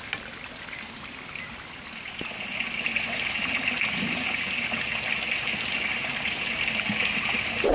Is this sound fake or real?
real